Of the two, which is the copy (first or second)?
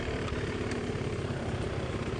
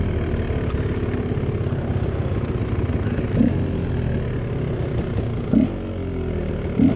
first